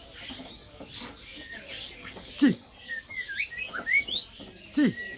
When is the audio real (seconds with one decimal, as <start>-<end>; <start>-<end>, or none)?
0.0-0.6; 3.1-5.2